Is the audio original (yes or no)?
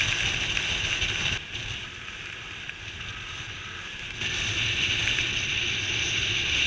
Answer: yes